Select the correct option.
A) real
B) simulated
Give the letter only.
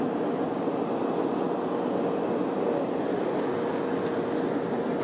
A